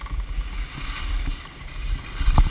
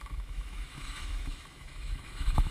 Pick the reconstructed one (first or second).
second